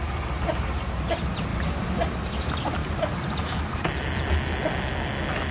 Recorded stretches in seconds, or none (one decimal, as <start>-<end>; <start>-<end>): 0.0-1.5; 2.1-5.5